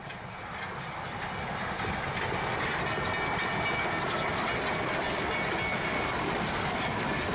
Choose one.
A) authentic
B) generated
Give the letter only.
A